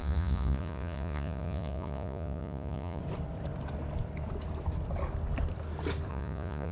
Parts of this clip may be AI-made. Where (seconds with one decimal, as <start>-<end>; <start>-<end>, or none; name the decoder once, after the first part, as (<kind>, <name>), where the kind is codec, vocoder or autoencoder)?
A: 0.0-3.0 (vocoder, Vocos); 6.1-6.7